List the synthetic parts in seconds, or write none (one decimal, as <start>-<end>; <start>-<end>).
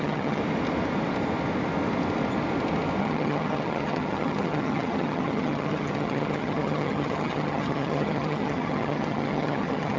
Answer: 0.0-0.4; 3.0-10.0